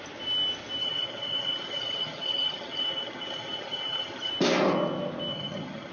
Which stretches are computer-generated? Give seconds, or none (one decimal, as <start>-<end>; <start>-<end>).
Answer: 0.8-4.3; 5.3-5.9